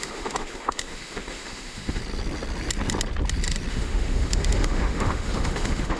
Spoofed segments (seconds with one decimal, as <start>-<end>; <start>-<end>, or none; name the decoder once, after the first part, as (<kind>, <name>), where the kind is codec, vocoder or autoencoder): 0.0-2.0 (autoencoder, DAC-VAE); 3.7-6.0